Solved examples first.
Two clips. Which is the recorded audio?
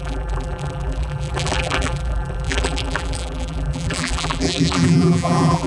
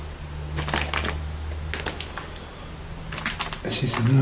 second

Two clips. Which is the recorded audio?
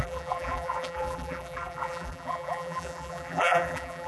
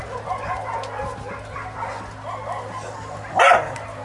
second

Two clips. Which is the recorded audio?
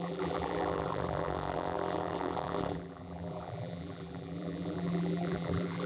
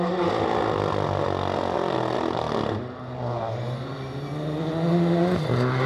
second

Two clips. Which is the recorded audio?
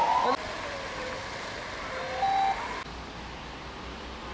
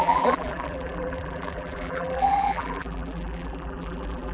first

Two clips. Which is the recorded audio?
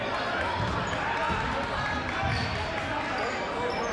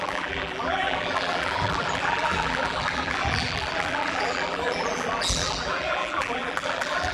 first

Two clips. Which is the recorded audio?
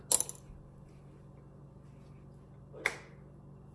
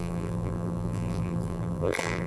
first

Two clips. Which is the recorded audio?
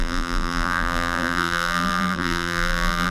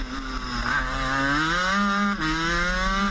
second